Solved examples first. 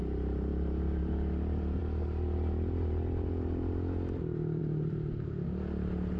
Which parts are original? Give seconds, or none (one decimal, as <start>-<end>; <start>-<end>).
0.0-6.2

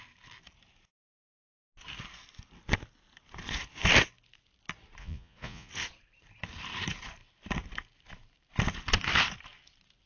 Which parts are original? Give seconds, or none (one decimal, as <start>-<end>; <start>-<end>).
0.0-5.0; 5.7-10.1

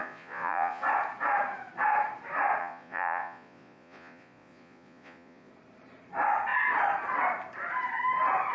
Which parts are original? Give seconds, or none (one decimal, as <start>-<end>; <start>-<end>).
0.8-2.6; 5.5-8.5

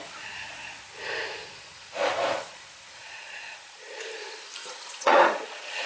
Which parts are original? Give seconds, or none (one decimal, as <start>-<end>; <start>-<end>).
0.0-1.4; 4.0-4.6